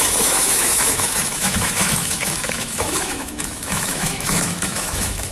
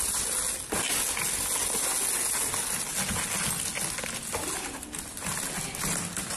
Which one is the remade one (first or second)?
first